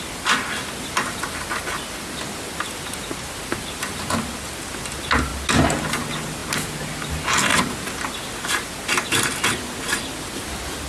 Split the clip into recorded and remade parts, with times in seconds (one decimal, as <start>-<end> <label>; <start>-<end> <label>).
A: 0.0-10.9 recorded